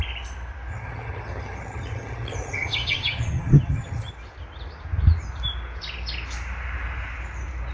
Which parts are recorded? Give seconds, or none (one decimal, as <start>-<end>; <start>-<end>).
0.0-0.7; 4.1-7.7